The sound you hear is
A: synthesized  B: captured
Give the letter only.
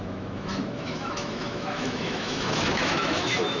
A